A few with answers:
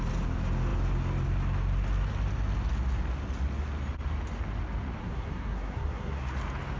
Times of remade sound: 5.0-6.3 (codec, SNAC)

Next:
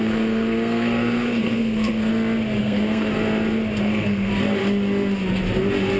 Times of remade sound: 0.0-2.1 (codec, SNAC); 2.6-3.1; 3.8-4.3

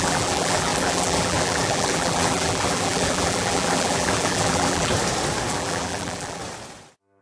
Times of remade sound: 0.0-4.9 (vocoder, BigVGAN v2); 5.5-6.4

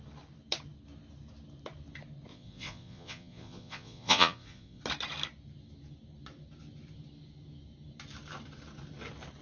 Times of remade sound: 2.3-4.8 (vocoder, Vocos)

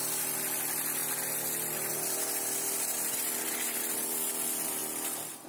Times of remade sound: 1.0-4.3 (vocoder, BigVGAN v2); 4.8-5.5

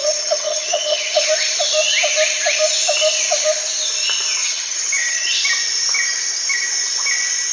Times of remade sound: 0.0-1.3 (vocoder, HiFi-GAN); 4.4-5.4

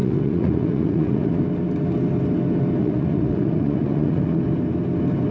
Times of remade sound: 0.0-1.4 (vocoder, Vocos); 2.8-4.4

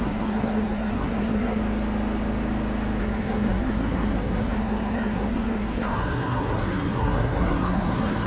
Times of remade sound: 0.0-1.6 (codec, SNAC); 3.0-8.3